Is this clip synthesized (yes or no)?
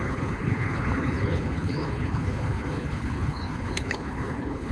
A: yes